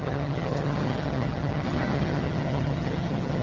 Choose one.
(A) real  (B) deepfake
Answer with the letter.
B